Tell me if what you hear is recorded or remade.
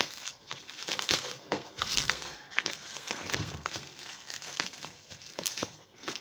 remade